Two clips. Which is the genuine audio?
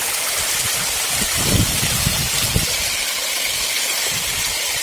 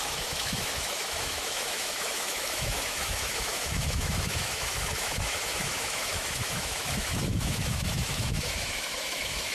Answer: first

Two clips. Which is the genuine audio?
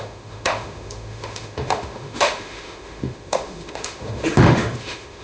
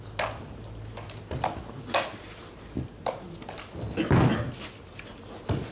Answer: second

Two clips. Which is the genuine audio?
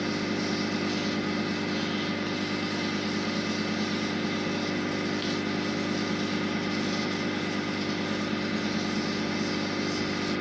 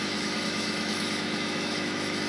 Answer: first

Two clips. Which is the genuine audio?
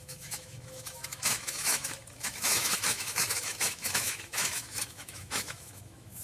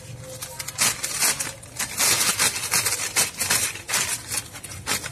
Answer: second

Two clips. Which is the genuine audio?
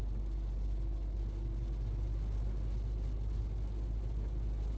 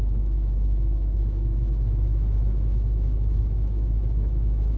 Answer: first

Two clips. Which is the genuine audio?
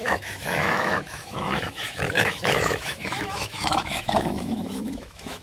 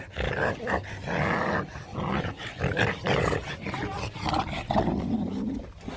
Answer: second